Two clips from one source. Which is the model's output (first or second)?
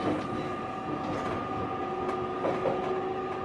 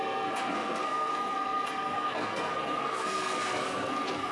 second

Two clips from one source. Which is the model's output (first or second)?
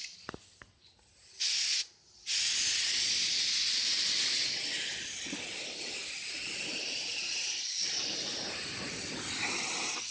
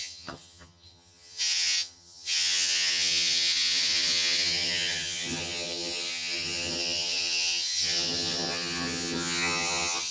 second